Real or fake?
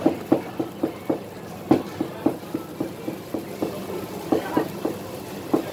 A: real